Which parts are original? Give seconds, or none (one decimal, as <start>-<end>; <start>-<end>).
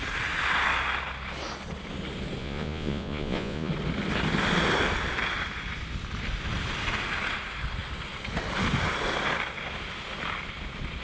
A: 0.0-2.4; 3.7-11.0